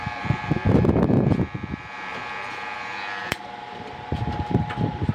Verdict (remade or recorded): remade